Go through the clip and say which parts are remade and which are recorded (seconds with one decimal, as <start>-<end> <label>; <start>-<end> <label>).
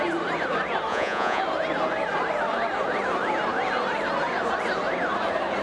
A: 0.0-0.9 recorded; 0.9-1.4 remade; 1.4-5.6 recorded